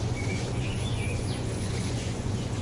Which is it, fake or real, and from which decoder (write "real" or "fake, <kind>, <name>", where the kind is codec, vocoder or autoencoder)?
fake, vocoder, Vocos